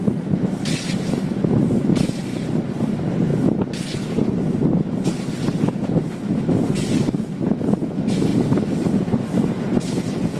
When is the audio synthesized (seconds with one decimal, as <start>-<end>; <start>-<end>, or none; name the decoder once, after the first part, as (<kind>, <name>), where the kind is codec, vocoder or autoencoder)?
none